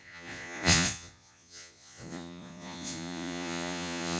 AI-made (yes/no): yes